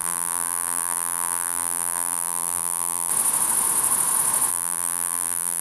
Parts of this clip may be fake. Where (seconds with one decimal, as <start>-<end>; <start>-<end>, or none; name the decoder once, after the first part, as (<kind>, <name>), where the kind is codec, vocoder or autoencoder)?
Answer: 0.0-3.1 (vocoder, BigVGAN v2); 4.5-5.6